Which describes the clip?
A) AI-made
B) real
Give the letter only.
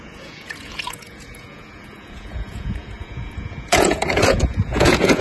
A